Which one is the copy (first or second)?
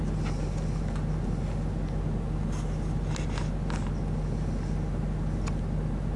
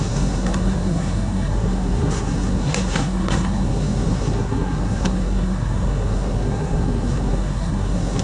second